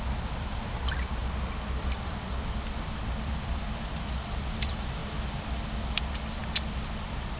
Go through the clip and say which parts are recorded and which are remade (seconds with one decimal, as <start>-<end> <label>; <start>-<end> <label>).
0.0-1.2 remade; 1.2-1.8 recorded; 1.8-5.0 remade; 5.0-5.8 recorded; 5.8-6.4 remade; 6.4-7.4 recorded